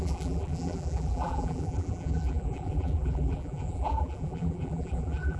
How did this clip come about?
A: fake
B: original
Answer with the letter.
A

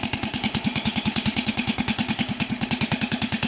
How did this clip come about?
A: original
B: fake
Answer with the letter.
B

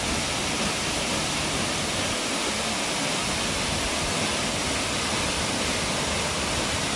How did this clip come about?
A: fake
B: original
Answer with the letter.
B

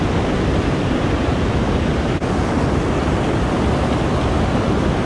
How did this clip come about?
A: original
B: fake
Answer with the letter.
A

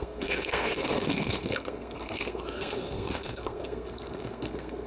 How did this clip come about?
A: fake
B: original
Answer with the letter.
A